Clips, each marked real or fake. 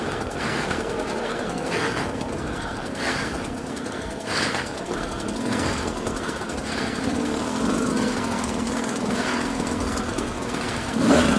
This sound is fake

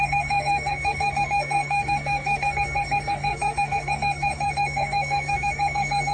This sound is fake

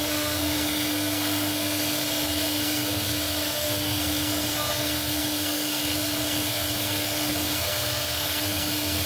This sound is fake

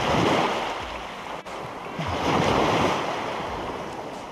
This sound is real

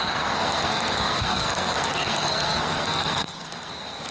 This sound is fake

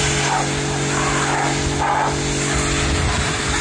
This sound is real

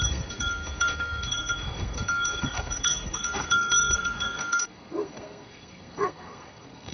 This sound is fake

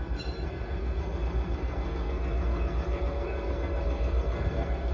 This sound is fake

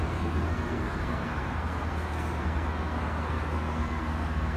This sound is fake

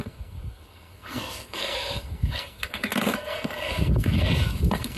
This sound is fake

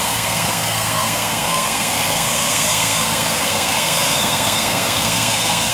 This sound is fake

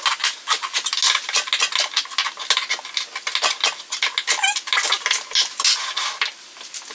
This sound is real